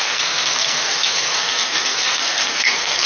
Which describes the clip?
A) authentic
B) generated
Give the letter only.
B